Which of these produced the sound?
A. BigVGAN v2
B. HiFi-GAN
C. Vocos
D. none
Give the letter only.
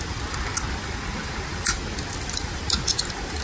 D